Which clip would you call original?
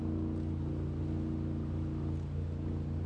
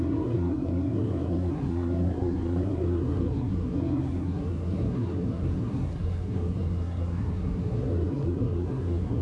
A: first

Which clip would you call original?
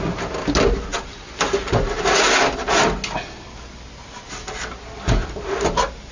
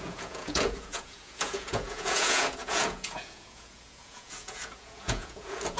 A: first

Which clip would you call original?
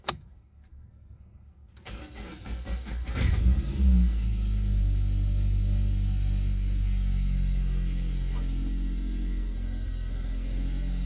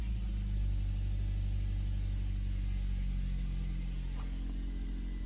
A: second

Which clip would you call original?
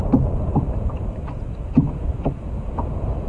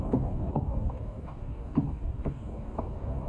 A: first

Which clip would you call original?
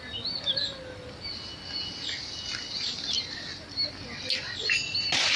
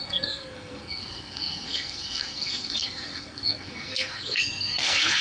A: first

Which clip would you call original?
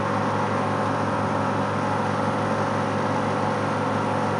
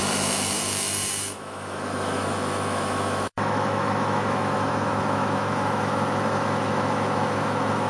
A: first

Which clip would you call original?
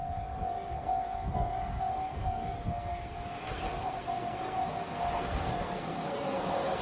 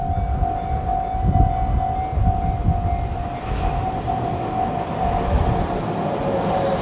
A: second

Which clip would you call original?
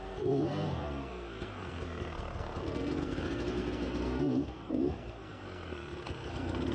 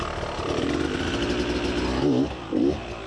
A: second